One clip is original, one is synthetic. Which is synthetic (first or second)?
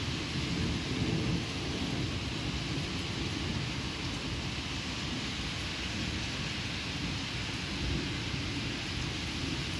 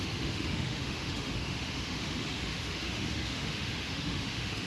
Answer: second